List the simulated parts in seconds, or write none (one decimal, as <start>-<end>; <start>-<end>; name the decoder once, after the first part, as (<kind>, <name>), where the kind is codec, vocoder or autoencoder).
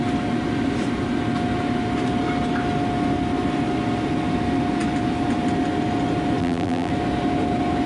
6.4-6.9 (vocoder, BigVGAN v2)